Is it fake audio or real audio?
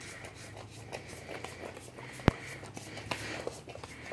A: real